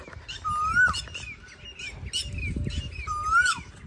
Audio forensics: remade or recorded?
recorded